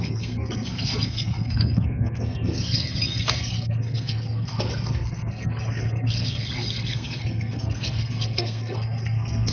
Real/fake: fake